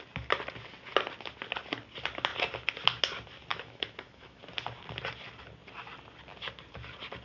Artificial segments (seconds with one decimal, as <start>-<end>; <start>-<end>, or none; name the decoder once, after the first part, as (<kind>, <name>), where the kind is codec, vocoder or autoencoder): 3.5-4.4 (autoencoder, DAC-VAE)